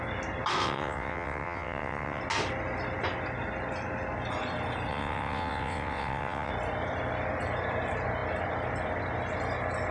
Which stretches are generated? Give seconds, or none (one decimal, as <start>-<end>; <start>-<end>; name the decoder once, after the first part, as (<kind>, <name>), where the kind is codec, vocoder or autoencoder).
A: 0.6-2.2 (vocoder, WaveNeXt); 4.9-6.5